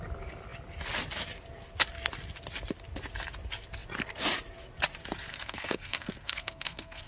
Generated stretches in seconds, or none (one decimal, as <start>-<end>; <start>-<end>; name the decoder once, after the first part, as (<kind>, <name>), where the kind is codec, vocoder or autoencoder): 5.3-7.1 (codec, SNAC)